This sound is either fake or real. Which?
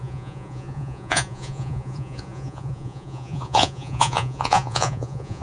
fake